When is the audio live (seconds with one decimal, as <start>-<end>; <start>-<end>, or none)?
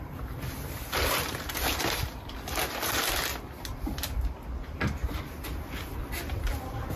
0.0-7.0